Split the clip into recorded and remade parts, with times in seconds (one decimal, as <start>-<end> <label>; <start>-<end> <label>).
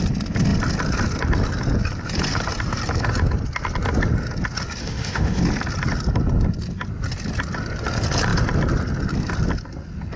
0.0-4.8 recorded; 4.8-5.4 remade; 5.4-10.2 recorded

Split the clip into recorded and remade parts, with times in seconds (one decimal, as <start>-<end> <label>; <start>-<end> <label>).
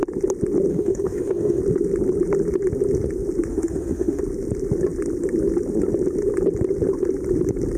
0.0-0.7 recorded; 0.7-1.6 remade; 1.6-3.5 recorded; 3.5-4.2 remade; 4.2-7.8 recorded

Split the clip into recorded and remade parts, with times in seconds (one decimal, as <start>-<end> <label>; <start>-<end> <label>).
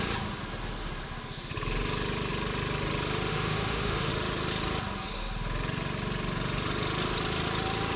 0.0-3.3 recorded; 3.3-4.1 remade; 4.1-8.0 recorded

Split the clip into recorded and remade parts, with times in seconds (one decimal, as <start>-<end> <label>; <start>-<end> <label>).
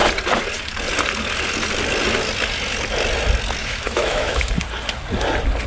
0.0-3.6 recorded; 3.6-4.5 remade; 4.5-5.7 recorded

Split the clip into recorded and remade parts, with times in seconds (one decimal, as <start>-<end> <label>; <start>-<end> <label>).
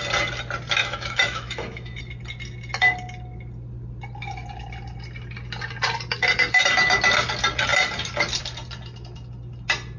0.0-0.8 recorded; 0.8-2.0 remade; 2.0-10.0 recorded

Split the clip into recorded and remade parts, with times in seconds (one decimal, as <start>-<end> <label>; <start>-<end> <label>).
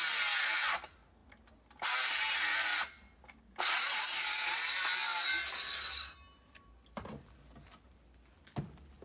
0.0-9.0 recorded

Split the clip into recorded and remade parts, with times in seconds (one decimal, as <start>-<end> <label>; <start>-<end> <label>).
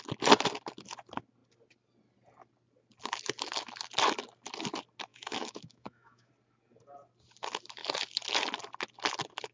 0.0-5.1 recorded; 5.1-6.3 remade; 6.3-9.5 recorded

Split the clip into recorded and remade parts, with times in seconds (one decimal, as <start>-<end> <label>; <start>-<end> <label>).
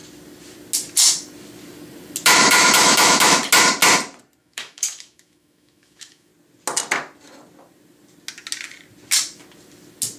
0.0-2.4 recorded; 2.4-3.4 remade; 3.4-4.4 recorded; 4.4-6.3 remade; 6.3-10.2 recorded